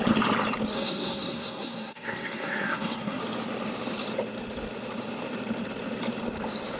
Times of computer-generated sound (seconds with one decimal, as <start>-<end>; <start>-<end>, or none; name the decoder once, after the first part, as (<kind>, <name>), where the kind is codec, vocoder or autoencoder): 0.7-3.2 (codec, SNAC)